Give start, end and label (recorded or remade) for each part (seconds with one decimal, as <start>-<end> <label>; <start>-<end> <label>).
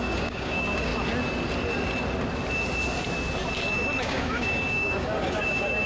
0.0-0.9 remade; 0.9-4.0 recorded; 4.0-5.9 remade